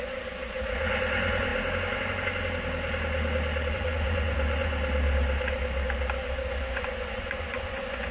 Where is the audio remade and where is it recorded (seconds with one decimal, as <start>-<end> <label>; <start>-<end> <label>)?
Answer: 0.0-1.5 remade; 1.5-3.7 recorded; 3.7-4.7 remade; 4.7-6.6 recorded; 6.6-8.1 remade